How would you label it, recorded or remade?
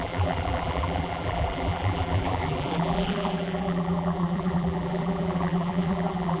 remade